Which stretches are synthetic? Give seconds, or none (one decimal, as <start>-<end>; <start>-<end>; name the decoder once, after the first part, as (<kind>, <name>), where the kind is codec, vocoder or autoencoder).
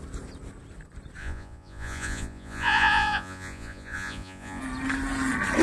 1.2-4.6 (vocoder, Vocos)